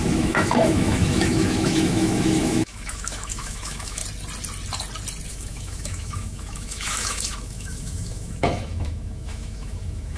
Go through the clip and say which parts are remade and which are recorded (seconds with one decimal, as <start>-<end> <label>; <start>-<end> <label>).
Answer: 0.0-4.0 remade; 4.0-5.3 recorded; 5.3-10.2 remade